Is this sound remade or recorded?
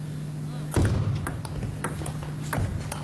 recorded